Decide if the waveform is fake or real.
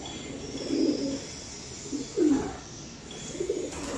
real